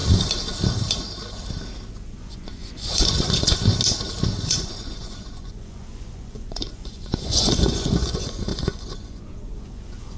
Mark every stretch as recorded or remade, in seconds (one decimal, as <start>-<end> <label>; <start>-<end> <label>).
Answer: 0.0-1.9 recorded; 1.9-3.6 remade; 3.6-4.4 recorded; 4.4-10.2 remade